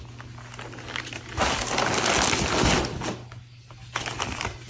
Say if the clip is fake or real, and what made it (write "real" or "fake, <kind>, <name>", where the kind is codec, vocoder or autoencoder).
real